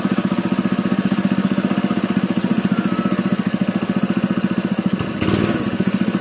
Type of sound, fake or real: real